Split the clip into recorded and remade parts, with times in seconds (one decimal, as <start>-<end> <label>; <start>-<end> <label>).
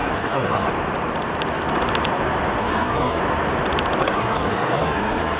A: 0.0-0.7 remade; 0.7-2.6 recorded; 2.6-3.2 remade; 3.2-4.0 recorded; 4.0-5.4 remade